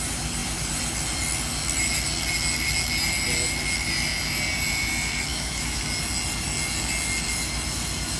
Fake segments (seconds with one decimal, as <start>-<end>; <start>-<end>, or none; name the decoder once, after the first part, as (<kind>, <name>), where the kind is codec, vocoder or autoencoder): 5.3-5.8 (autoencoder, DAC-VAE)